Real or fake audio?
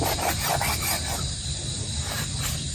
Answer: real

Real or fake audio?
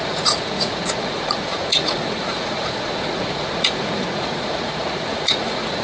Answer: fake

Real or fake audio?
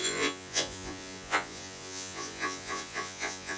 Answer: fake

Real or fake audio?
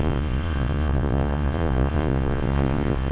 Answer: fake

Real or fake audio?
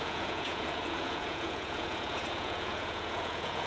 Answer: fake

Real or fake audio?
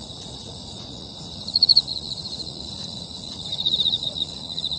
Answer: fake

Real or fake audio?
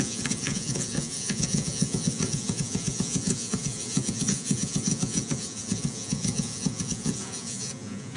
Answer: fake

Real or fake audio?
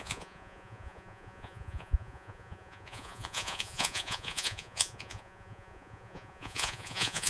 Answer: fake